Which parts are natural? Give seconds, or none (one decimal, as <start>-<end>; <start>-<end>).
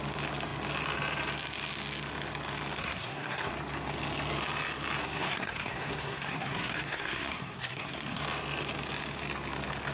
0.0-2.8; 3.5-5.0; 8.2-9.9